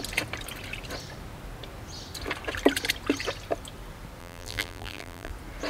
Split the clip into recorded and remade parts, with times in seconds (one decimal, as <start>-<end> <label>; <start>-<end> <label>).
0.0-4.2 recorded; 4.2-5.3 remade; 5.3-5.7 recorded